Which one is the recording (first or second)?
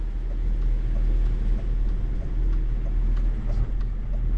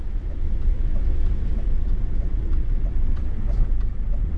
first